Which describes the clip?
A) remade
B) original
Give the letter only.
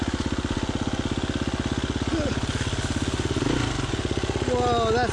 B